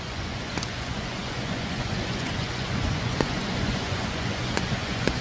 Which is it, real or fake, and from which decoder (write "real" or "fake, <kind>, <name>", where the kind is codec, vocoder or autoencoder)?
fake, vocoder, Vocos